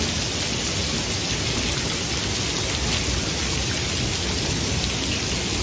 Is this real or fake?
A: real